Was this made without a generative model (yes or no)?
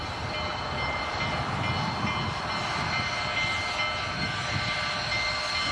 yes